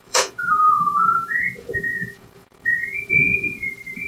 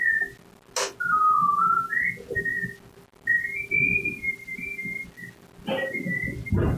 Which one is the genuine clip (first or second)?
second